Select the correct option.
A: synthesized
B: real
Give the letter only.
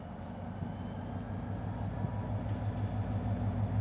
B